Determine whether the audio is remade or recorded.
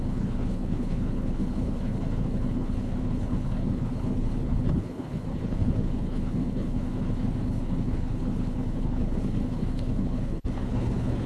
remade